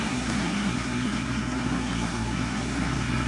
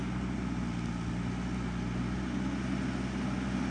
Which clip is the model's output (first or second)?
first